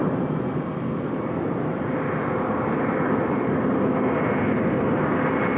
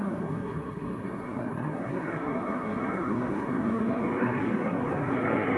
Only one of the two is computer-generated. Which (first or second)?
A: second